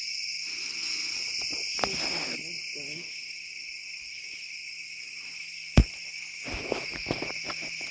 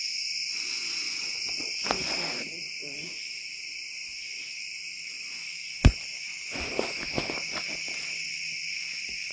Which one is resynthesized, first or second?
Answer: second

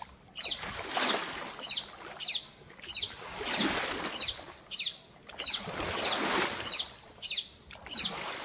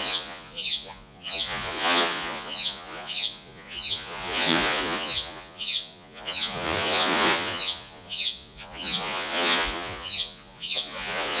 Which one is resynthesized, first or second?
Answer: second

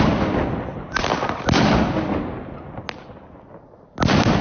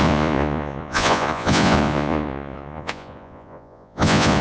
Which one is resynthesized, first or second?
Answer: second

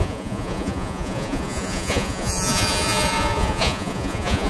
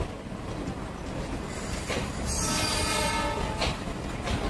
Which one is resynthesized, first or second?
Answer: first